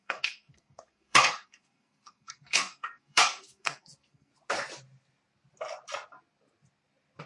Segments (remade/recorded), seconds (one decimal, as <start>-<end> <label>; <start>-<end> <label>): 0.0-4.3 remade; 4.3-7.3 recorded